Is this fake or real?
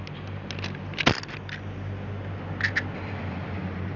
real